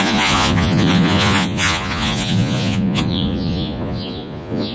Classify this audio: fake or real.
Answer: fake